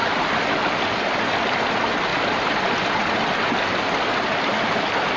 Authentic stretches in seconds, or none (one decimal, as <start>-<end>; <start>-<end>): 0.0-5.2